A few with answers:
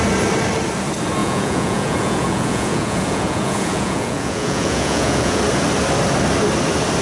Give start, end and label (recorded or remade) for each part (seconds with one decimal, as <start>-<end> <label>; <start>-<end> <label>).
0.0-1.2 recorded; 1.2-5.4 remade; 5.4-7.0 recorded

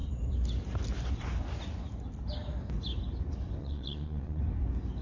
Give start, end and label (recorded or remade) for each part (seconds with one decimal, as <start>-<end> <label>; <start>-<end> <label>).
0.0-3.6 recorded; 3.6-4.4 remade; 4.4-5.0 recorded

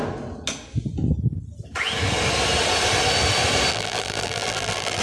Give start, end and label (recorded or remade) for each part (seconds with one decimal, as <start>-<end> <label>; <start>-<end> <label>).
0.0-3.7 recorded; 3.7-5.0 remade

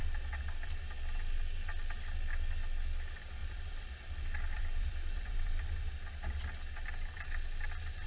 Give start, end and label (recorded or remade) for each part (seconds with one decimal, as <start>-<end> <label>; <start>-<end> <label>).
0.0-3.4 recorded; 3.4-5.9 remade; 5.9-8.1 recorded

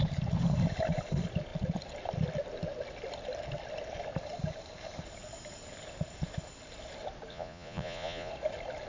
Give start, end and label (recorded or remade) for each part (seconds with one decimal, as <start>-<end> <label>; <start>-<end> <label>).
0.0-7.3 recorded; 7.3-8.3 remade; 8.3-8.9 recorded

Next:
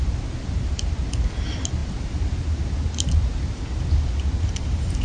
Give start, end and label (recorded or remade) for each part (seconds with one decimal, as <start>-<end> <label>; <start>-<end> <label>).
0.0-1.8 recorded; 1.8-5.0 remade

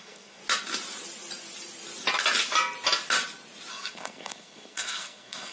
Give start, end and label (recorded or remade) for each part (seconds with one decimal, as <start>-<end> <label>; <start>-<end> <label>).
0.0-0.4 remade; 0.4-3.7 recorded; 3.7-5.5 remade

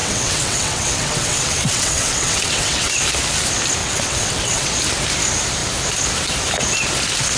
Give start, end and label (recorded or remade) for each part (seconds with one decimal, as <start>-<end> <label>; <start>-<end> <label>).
0.0-2.9 remade; 2.9-3.8 recorded; 3.8-4.7 remade; 4.7-7.4 recorded